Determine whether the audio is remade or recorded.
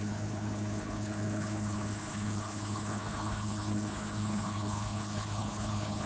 remade